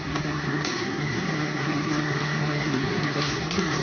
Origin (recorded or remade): remade